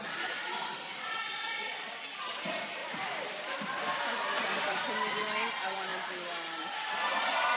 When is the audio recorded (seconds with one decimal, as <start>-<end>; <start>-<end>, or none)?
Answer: 0.0-7.6